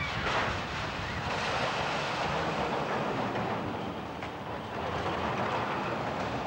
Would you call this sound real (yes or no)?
yes